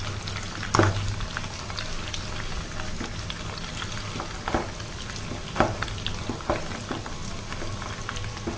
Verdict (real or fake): real